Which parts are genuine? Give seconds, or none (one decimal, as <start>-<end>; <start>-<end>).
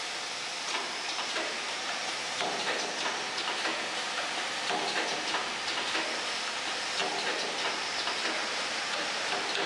0.0-0.5; 3.2-7.0; 8.0-8.4